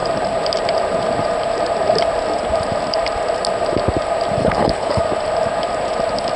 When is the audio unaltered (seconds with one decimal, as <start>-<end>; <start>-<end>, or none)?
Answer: 0.0-4.4; 5.0-6.4

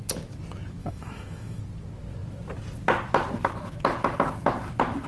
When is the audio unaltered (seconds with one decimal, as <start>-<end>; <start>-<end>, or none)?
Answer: 0.0-0.8; 1.6-5.1

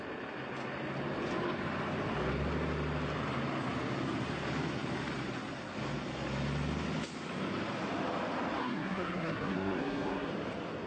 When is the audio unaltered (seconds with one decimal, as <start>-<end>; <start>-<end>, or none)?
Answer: 0.0-8.6; 10.3-10.9